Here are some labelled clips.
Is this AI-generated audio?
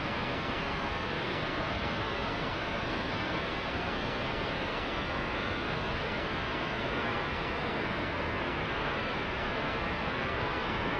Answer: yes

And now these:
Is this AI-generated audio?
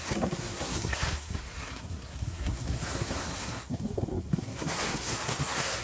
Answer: yes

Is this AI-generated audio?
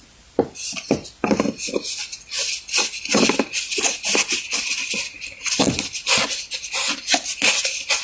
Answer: no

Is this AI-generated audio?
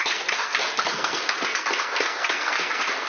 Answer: yes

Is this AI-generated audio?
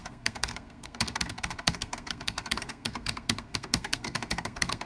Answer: yes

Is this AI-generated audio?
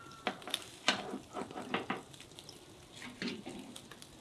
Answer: no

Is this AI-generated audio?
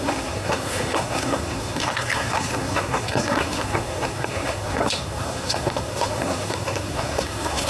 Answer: yes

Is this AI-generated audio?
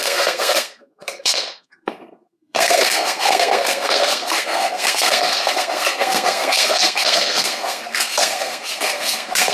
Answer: yes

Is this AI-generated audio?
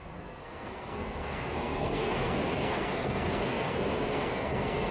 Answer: yes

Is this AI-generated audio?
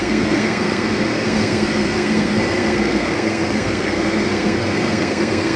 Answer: yes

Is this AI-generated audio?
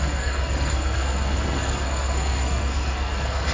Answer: yes